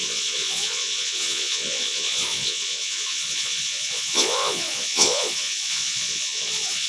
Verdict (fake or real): fake